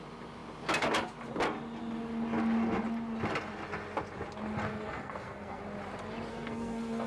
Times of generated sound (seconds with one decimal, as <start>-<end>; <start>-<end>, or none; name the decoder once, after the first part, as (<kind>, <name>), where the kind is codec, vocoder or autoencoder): 4.7-5.6 (codec, SNAC); 6.3-7.1